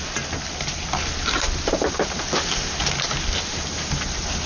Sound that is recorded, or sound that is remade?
recorded